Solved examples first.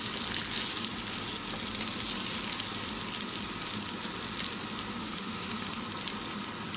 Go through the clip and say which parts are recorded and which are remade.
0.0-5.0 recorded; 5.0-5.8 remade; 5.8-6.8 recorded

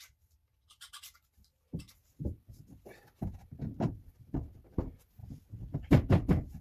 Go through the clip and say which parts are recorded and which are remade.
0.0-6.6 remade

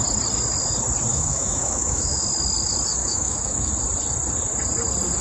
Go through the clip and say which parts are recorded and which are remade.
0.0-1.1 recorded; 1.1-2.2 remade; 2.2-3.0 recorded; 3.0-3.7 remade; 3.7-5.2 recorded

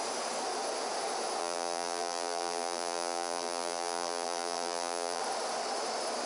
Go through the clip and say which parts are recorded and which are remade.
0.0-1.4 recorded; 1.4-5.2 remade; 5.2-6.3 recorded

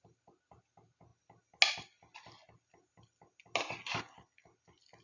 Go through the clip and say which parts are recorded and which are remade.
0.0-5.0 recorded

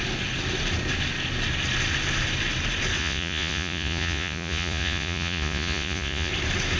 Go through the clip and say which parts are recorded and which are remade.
0.0-3.0 recorded; 3.0-6.3 remade; 6.3-6.8 recorded

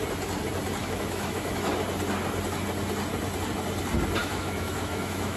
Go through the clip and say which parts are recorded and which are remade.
0.0-0.8 recorded; 0.8-1.7 remade; 1.7-4.2 recorded; 4.2-5.4 remade